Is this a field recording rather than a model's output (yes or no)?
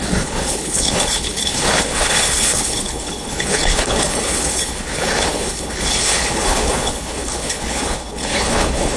no